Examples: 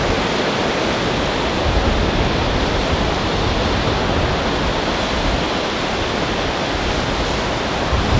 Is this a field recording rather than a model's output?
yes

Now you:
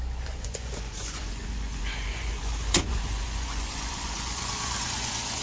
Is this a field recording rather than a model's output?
no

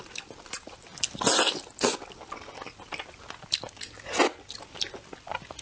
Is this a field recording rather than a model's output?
yes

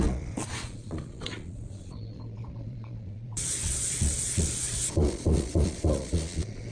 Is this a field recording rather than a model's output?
no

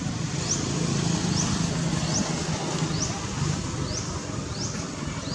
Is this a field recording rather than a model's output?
yes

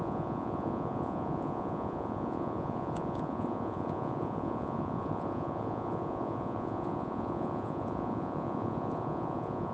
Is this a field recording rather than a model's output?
no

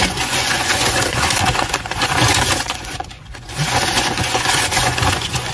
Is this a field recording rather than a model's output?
no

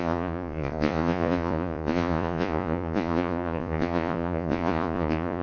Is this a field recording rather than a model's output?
no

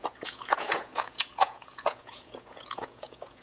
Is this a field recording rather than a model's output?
no